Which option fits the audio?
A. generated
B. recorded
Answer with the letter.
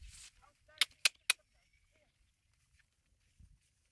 B